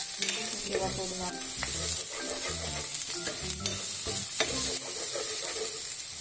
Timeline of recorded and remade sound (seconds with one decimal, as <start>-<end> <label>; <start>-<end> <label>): 0.0-6.2 recorded